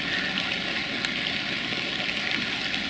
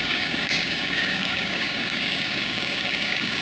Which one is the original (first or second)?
first